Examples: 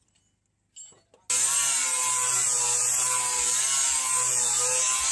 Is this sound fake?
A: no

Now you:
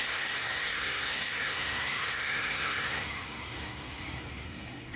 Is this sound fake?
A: yes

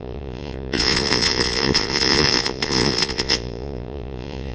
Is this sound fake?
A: yes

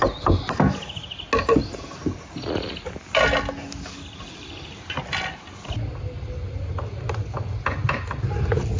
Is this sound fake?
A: no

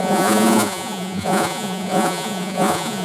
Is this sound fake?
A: yes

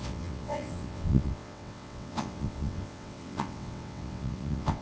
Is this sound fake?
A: yes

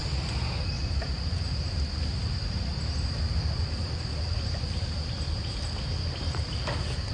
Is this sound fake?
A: no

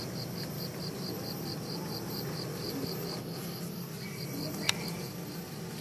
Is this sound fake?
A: no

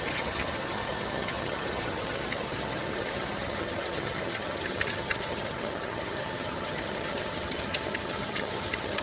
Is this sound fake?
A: yes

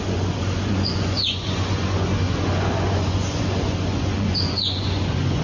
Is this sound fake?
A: yes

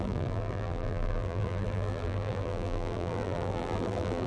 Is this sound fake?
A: yes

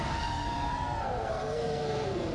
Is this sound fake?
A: yes